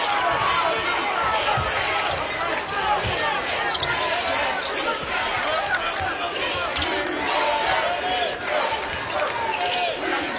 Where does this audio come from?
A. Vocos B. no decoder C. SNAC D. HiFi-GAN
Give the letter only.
B